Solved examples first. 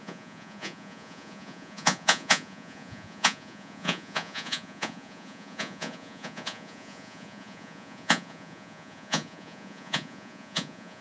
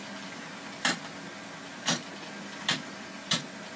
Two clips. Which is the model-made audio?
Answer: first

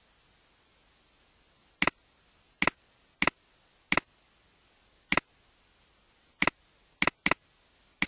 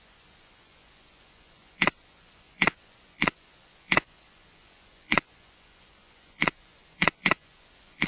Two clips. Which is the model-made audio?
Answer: second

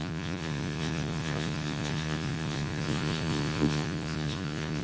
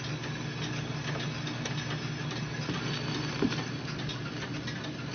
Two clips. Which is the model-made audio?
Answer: first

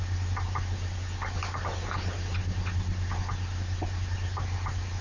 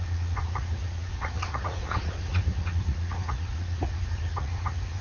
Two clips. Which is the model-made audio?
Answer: second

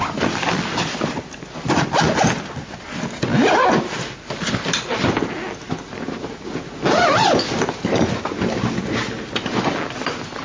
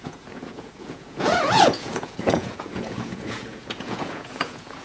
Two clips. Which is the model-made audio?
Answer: second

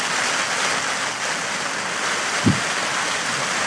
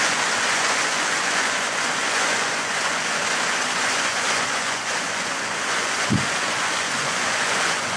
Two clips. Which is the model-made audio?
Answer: second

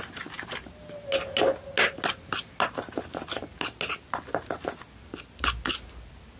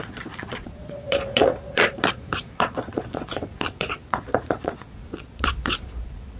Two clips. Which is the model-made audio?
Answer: second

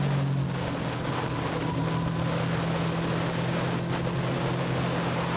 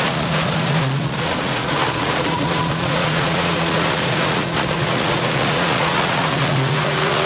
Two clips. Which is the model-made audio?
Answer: second